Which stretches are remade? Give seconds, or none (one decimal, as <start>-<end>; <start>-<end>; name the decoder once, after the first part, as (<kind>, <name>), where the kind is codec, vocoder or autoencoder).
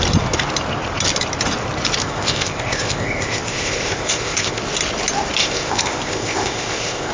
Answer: 2.0-4.6 (codec, ZipCodec); 5.4-7.1